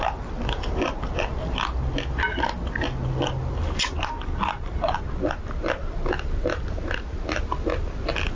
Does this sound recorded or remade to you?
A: recorded